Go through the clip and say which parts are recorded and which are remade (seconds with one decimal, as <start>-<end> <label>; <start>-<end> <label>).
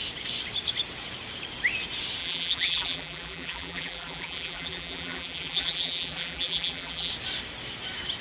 0.0-2.2 recorded; 2.2-7.1 remade; 7.1-8.2 recorded